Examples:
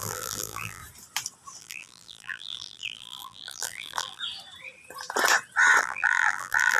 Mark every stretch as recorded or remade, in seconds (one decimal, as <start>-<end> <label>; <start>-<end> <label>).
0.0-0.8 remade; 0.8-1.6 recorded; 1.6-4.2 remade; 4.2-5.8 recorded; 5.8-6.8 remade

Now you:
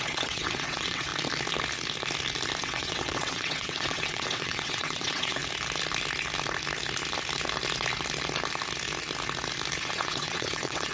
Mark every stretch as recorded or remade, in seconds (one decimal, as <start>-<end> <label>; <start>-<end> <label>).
0.0-1.1 remade; 1.1-2.6 recorded; 2.6-5.4 remade; 5.4-9.8 recorded; 9.8-10.9 remade

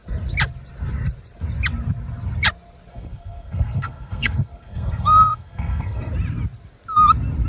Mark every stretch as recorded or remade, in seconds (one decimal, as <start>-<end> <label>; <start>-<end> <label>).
0.0-2.9 recorded; 2.9-6.1 remade; 6.1-7.5 recorded

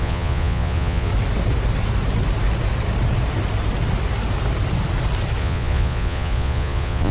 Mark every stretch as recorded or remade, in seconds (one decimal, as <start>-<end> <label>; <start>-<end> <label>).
0.0-1.1 remade; 1.1-5.4 recorded; 5.4-7.1 remade

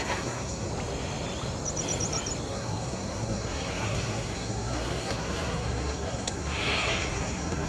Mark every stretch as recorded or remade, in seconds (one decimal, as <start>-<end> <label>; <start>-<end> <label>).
0.0-0.7 remade; 0.7-2.5 recorded; 2.5-7.7 remade

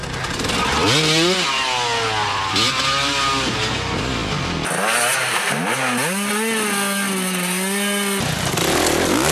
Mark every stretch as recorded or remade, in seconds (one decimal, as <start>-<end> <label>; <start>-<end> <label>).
0.0-9.3 recorded

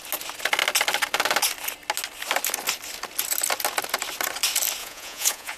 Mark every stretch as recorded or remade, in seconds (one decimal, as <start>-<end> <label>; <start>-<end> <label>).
0.0-4.8 recorded; 4.8-5.6 remade